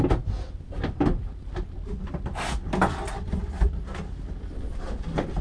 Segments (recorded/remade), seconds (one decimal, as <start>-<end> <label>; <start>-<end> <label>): 0.0-5.4 recorded